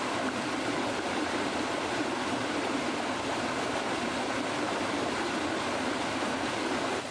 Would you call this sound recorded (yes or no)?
no